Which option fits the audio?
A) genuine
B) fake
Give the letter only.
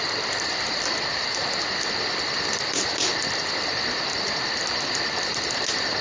A